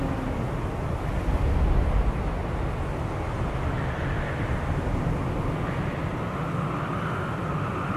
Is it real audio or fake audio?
real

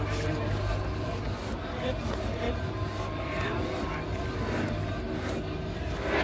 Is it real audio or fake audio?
real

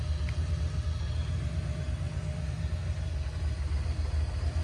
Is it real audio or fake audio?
real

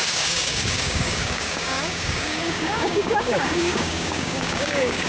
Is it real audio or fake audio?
fake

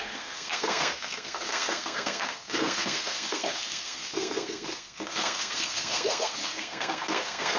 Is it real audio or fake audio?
fake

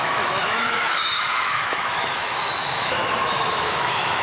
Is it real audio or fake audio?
fake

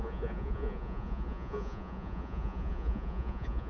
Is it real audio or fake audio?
fake